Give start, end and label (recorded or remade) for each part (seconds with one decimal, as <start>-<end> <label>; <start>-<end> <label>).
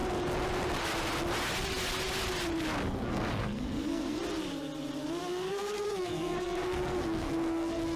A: 0.0-2.9 recorded; 2.9-4.2 remade; 4.2-5.3 recorded; 5.3-8.0 remade